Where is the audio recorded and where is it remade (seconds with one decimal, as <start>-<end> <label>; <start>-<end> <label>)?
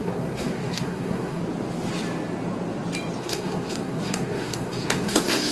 0.0-1.4 remade; 1.4-3.2 recorded; 3.2-5.5 remade